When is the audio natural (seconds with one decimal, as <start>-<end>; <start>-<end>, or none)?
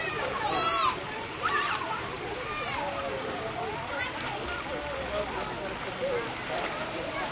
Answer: 4.3-6.8